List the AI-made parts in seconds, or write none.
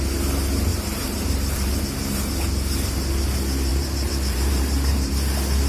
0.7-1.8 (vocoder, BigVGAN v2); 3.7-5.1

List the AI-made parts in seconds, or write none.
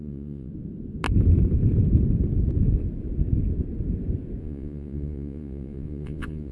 0.0-0.5 (vocoder, Vocos); 4.4-6.5